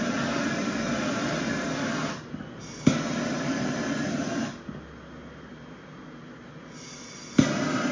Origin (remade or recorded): recorded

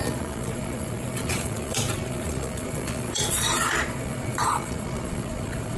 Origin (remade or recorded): remade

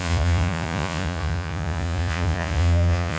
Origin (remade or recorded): remade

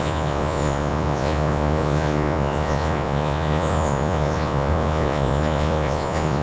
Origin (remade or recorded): remade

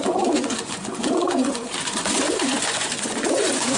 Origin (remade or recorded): remade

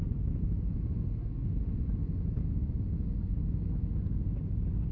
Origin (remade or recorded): recorded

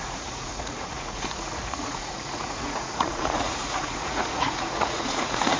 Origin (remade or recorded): remade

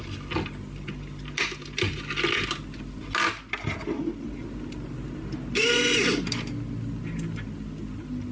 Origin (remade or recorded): recorded